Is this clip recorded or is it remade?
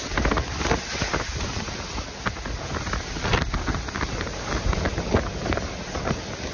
recorded